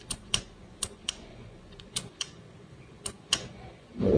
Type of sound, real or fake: fake